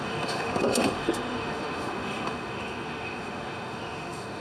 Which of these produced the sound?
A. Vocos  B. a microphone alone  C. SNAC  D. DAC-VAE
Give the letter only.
D